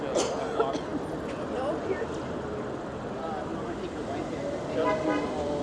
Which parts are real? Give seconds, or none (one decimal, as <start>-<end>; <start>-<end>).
0.0-5.6